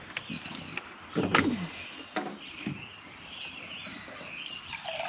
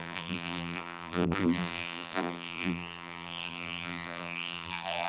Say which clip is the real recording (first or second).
first